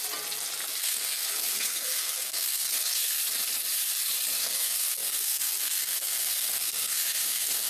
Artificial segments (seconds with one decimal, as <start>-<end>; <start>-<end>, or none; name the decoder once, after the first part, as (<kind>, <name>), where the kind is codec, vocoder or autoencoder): 0.8-3.2 (codec, SNAC); 4.4-7.7